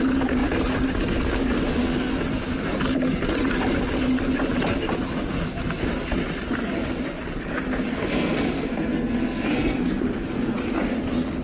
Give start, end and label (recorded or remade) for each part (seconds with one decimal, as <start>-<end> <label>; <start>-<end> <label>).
0.0-1.7 recorded; 1.7-2.2 remade; 2.2-7.9 recorded; 7.9-10.0 remade; 10.0-11.4 recorded